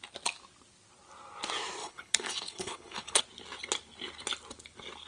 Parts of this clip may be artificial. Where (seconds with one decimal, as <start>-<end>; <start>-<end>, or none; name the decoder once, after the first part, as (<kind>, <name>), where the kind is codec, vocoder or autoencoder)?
1.8-3.2 (codec, HILCodec)